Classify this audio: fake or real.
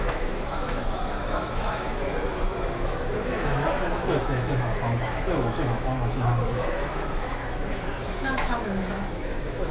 fake